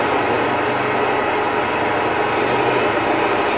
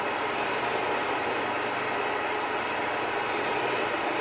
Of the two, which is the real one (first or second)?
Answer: first